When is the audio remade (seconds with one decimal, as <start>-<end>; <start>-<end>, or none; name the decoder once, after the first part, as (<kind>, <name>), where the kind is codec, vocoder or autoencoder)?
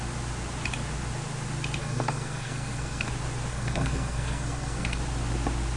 1.8-3.1 (codec, SNAC); 3.5-5.0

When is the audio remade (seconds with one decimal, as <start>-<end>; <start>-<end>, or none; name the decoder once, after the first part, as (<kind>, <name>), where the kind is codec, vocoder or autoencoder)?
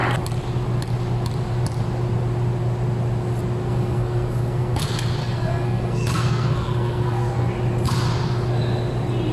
3.6-4.8 (codec, SNAC); 5.2-7.5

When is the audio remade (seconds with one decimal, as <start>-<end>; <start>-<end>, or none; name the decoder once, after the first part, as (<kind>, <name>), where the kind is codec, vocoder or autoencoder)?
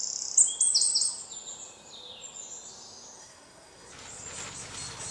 3.2-3.9 (codec, SNAC)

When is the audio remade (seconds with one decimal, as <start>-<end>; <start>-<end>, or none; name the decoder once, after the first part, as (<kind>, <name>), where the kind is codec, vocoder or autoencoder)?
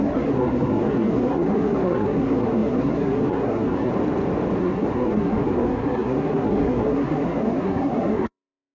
0.0-3.9 (codec, SNAC); 4.6-8.7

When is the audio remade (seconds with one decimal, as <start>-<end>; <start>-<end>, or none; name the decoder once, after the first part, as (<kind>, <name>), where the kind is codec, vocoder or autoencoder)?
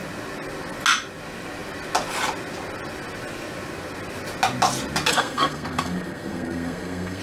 5.1-7.2 (codec, SNAC)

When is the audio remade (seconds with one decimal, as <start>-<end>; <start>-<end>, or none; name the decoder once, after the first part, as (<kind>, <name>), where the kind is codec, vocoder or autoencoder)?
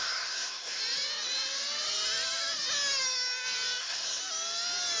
0.0-0.8 (codec, SNAC); 3.8-4.2